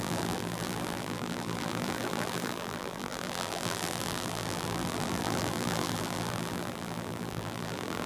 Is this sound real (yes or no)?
no